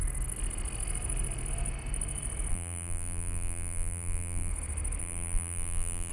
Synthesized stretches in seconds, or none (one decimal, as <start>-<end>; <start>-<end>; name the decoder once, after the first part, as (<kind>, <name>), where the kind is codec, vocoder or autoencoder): 2.5-4.5 (vocoder, BigVGAN v2); 5.0-6.1